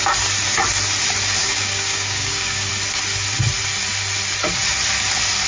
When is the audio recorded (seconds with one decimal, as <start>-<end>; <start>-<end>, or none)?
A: 0.0-1.4; 2.7-5.5